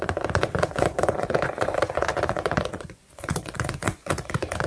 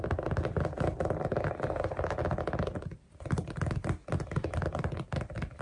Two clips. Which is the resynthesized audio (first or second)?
first